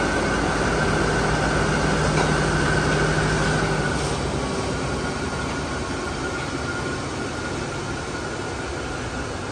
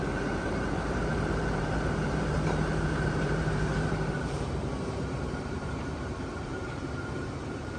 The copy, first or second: second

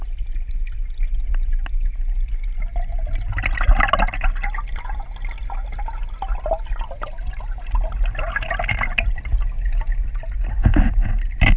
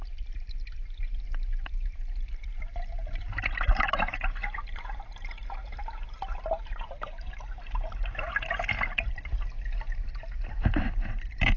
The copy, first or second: second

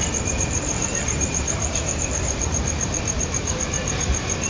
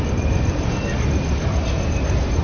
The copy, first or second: first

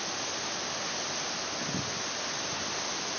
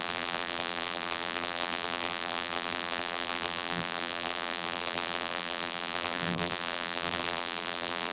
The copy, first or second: second